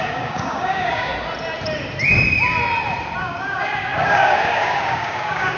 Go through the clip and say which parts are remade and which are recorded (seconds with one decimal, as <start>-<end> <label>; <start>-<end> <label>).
0.0-1.1 remade; 1.1-3.2 recorded; 3.2-5.6 remade

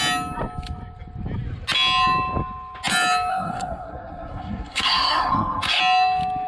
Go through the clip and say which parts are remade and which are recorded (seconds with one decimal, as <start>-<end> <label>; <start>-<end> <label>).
0.0-3.3 recorded; 3.3-5.8 remade; 5.8-6.5 recorded

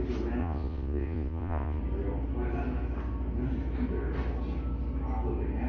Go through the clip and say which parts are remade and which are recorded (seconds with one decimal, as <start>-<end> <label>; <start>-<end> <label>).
0.0-0.4 recorded; 0.4-1.8 remade; 1.8-5.7 recorded

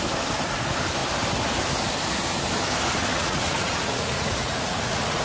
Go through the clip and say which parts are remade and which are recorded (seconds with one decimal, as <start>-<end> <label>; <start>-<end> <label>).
0.0-3.1 recorded; 3.1-5.2 remade

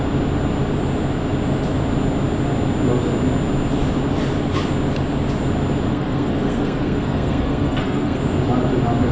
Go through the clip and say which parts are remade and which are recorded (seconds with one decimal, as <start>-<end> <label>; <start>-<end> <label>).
0.0-5.9 recorded; 5.9-8.2 remade; 8.2-9.1 recorded